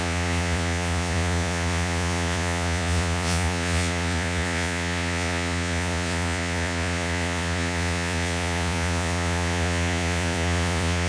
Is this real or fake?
fake